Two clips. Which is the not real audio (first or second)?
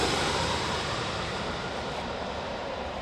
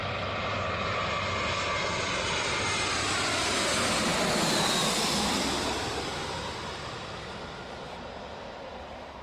first